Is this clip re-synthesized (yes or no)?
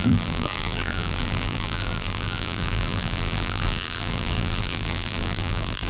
yes